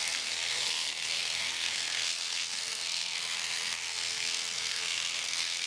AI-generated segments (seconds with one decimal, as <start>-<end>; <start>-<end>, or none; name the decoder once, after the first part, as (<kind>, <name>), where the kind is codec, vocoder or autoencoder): 0.0-5.7 (codec, SNAC)